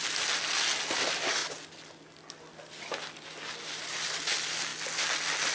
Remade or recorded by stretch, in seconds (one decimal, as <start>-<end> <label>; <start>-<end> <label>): 0.0-5.5 recorded

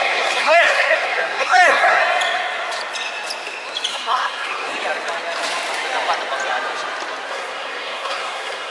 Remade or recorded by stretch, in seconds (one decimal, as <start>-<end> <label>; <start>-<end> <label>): 0.0-2.0 remade; 2.0-3.9 recorded; 3.9-4.7 remade; 4.7-7.3 recorded; 7.3-8.7 remade

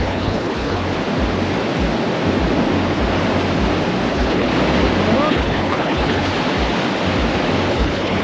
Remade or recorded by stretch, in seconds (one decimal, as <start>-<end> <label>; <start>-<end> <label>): 0.0-0.8 remade; 0.8-4.1 recorded; 4.1-4.5 remade; 4.5-5.3 recorded; 5.3-6.3 remade; 6.3-7.7 recorded; 7.7-8.2 remade

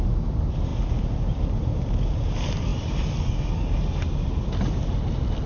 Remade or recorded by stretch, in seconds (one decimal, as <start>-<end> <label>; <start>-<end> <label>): 0.0-5.5 recorded

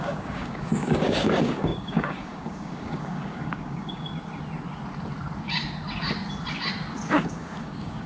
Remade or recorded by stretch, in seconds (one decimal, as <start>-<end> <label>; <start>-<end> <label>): 0.0-4.1 remade; 4.1-7.1 recorded; 7.1-8.1 remade

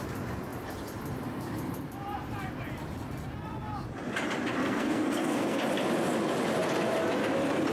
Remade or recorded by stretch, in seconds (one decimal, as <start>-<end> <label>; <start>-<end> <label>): 0.0-4.6 recorded; 4.6-5.6 remade; 5.6-7.7 recorded

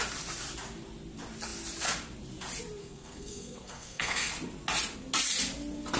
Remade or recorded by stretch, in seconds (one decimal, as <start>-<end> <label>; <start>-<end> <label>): 0.0-2.8 recorded; 2.8-4.3 remade; 4.3-6.0 recorded

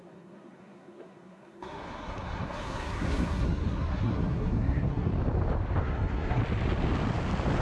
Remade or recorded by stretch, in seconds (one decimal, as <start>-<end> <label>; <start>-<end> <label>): 0.0-5.1 remade; 5.1-5.8 recorded; 5.8-6.4 remade; 6.4-7.6 recorded